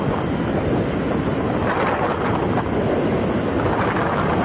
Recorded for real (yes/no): yes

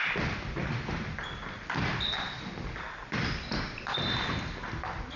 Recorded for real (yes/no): no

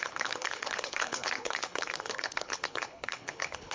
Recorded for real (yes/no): no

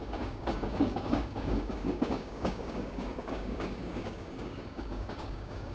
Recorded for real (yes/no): no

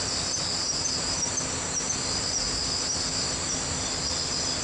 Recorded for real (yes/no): yes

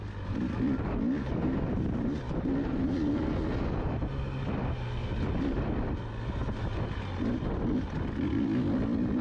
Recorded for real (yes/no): yes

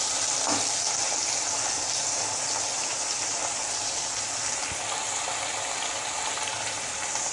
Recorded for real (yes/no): yes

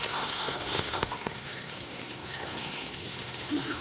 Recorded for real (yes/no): no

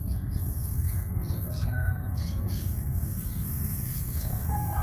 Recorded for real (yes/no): no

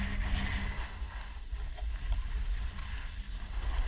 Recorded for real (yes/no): yes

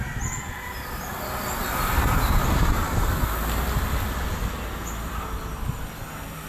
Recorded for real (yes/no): yes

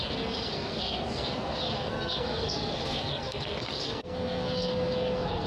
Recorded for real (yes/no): no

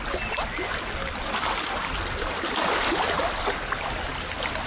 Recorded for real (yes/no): yes